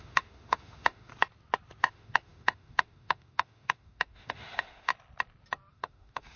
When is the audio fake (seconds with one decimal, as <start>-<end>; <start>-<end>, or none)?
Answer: 0.0-1.1; 1.8-4.9; 5.7-6.4